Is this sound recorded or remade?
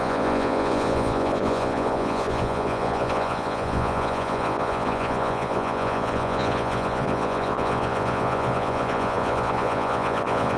remade